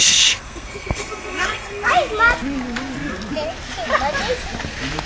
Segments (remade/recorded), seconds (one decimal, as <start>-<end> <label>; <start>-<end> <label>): 0.0-1.9 remade; 1.9-5.1 recorded